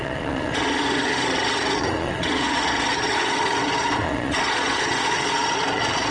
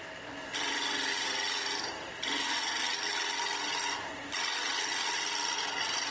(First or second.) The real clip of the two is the second